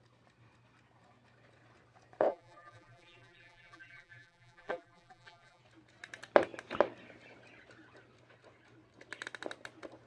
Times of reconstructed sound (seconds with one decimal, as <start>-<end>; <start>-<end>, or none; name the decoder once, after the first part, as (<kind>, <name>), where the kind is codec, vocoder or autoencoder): 2.3-5.6 (vocoder, BigVGAN v2)